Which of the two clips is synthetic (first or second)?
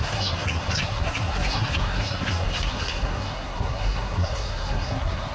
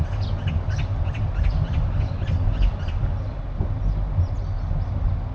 first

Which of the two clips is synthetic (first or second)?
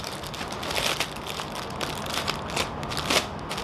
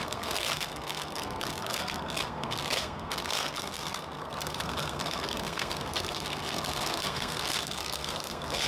second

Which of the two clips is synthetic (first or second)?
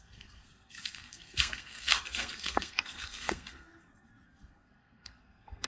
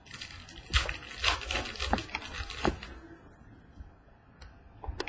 first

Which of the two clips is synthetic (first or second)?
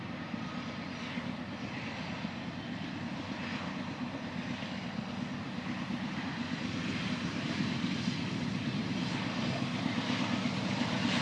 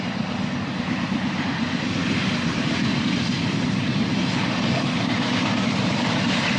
second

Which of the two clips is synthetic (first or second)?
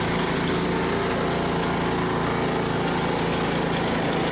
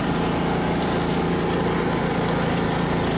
second